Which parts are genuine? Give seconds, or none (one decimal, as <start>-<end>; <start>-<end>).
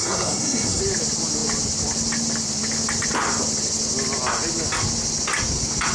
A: 0.8-5.9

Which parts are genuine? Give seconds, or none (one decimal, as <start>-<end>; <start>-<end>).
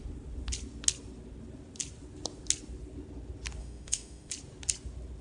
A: 0.0-3.6; 4.3-5.2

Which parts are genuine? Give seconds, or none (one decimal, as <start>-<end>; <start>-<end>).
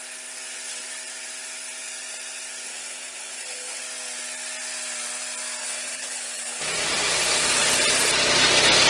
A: 0.0-2.7; 3.8-5.6; 6.6-8.9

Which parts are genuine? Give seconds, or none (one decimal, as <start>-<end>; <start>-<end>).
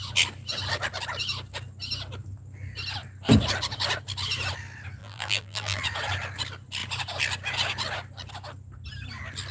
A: 0.0-5.0; 5.8-9.5